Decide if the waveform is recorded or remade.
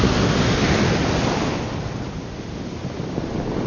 recorded